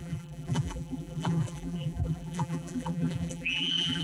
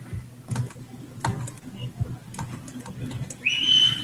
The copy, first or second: first